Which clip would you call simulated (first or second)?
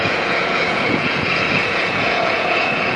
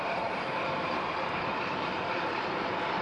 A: first